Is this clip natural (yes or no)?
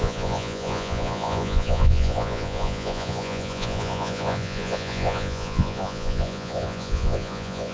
no